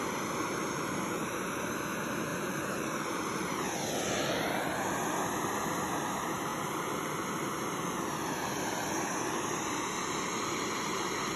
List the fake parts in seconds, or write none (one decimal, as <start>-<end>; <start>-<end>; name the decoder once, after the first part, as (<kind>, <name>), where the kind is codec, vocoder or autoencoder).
2.3-3.3 (vocoder, BigVGAN v2)